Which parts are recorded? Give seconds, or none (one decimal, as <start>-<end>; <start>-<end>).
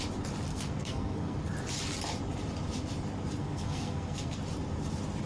0.0-0.5; 1.4-3.4; 4.4-5.3